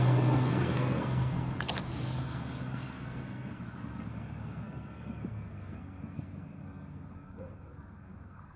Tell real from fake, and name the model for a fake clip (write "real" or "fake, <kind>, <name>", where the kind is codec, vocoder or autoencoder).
fake, codec, SNAC